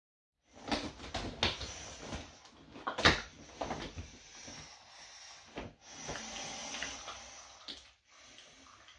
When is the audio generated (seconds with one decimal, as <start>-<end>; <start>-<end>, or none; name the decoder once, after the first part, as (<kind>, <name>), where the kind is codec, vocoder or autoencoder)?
none